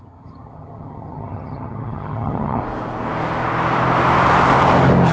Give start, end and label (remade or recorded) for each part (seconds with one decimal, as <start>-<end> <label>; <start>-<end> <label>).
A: 0.0-2.6 remade; 2.6-5.1 recorded